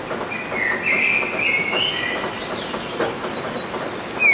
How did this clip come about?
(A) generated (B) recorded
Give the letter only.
B